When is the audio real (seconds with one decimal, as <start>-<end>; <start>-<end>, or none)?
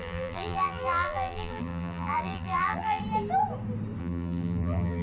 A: 3.0-4.0